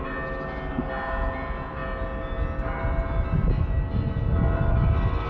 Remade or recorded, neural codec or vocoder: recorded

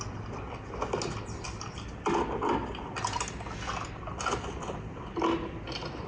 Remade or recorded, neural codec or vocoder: recorded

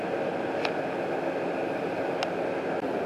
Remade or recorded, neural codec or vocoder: recorded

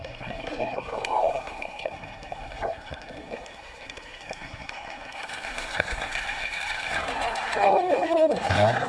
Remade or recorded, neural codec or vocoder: remade, codec, SNAC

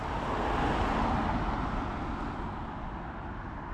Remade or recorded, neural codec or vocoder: recorded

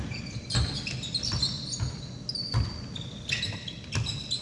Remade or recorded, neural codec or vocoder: recorded